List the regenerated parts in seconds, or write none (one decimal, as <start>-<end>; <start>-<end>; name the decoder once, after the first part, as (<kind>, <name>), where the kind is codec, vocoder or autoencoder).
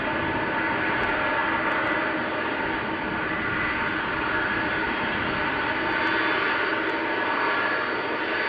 none